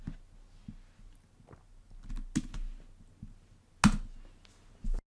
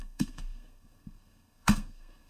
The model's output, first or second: second